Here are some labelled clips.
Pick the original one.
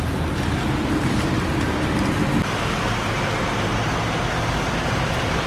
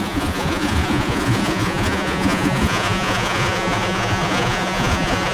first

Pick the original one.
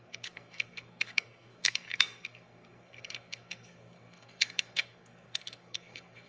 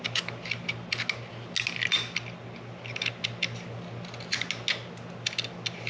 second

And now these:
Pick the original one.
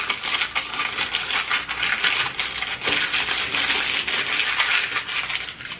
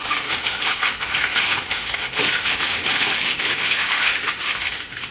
first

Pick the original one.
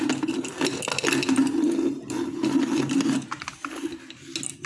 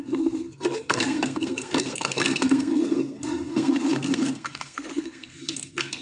first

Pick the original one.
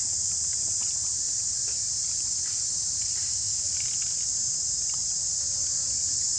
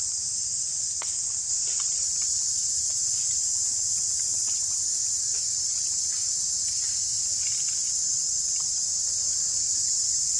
first